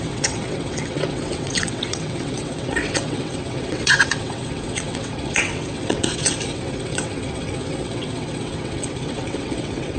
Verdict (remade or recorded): remade